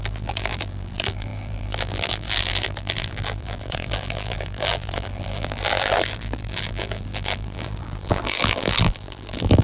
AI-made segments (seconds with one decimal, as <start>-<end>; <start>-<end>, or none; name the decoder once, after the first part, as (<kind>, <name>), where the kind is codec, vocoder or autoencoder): 0.0-9.6 (vocoder, BigVGAN v2)